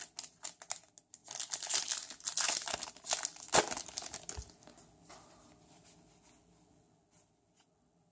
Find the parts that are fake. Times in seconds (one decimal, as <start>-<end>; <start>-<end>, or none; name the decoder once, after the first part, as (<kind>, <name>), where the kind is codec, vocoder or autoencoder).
none